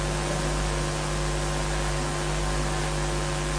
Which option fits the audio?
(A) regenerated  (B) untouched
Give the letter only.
B